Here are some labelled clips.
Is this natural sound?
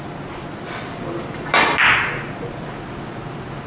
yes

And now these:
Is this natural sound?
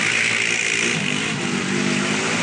yes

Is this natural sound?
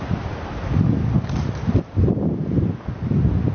yes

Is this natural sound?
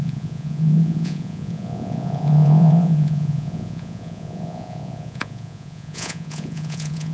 no